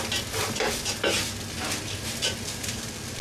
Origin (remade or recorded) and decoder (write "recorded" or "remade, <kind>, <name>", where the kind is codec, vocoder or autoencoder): recorded